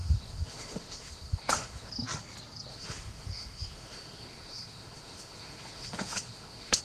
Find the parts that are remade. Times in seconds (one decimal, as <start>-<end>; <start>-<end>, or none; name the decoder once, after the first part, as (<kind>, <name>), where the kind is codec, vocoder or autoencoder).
0.0-1.9 (autoencoder, DAC-VAE); 2.7-6.8